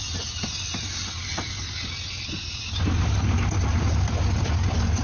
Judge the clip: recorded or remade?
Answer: recorded